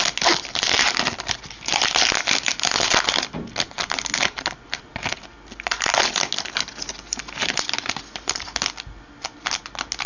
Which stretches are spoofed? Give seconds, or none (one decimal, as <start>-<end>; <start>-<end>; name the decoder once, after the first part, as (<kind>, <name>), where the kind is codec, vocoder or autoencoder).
none